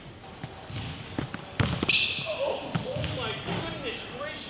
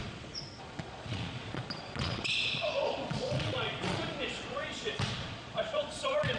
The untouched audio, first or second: first